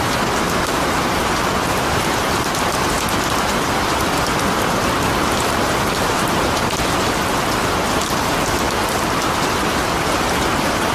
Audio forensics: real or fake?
real